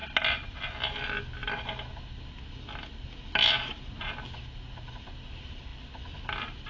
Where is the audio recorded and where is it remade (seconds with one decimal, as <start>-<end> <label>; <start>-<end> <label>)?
0.0-6.7 recorded